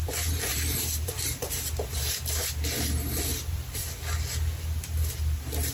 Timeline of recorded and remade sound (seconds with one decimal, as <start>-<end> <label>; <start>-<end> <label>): 0.0-0.5 recorded; 0.5-2.5 remade; 2.5-3.3 recorded; 3.3-3.9 remade; 3.9-5.7 recorded